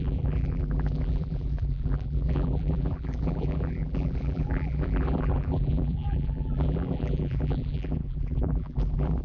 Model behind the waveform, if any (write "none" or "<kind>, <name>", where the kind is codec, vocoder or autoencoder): vocoder, BigVGAN v2